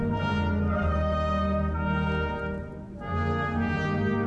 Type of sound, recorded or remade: recorded